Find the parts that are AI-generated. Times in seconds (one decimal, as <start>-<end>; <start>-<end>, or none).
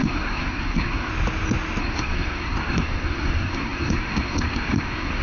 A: 0.0-1.1; 1.8-5.2